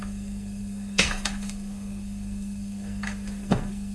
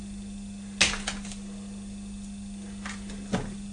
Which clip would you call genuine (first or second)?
second